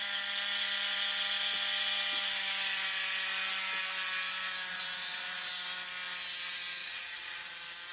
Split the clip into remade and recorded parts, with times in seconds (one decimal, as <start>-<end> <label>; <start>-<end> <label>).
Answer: 0.0-4.7 recorded; 4.7-5.5 remade; 5.5-6.8 recorded; 6.8-7.5 remade; 7.5-7.9 recorded